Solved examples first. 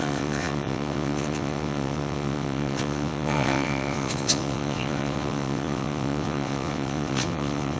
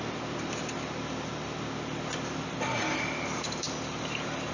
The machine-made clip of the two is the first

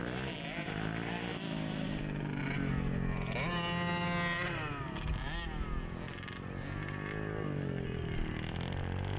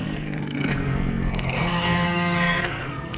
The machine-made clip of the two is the second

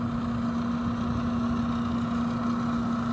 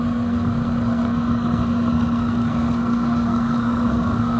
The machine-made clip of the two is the second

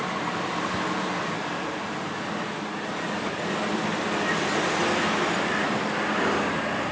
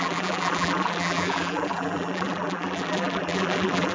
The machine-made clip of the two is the second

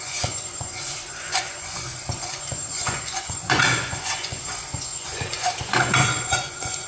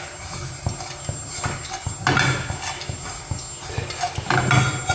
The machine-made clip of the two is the first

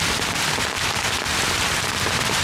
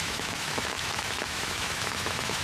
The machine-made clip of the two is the second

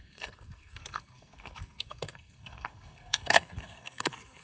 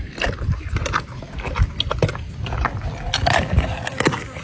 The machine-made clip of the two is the first